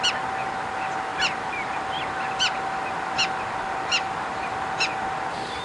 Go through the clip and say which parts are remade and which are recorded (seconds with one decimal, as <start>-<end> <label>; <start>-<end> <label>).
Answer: 0.0-5.6 recorded